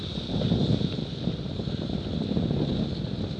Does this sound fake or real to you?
real